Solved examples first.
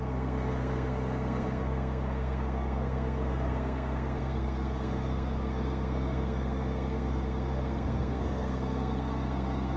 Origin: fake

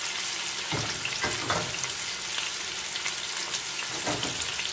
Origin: real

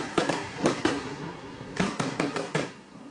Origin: fake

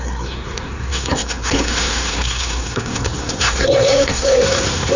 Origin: fake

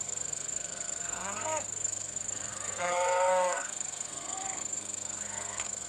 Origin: fake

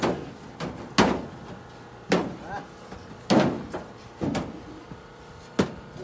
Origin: real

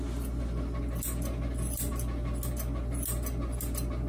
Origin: real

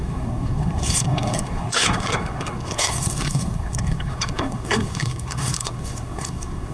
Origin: fake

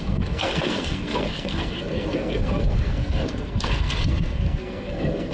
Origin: fake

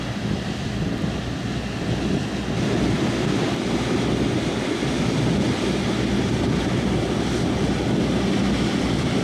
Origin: real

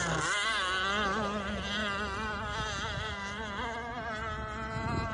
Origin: real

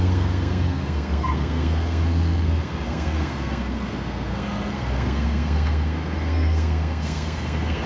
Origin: fake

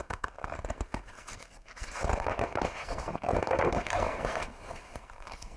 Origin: fake